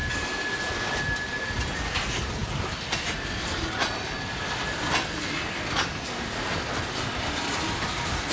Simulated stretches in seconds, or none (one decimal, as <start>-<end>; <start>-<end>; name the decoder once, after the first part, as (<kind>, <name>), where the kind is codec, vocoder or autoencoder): none